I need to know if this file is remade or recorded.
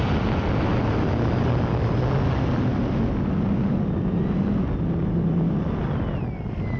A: recorded